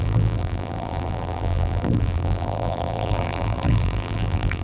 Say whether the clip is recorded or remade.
remade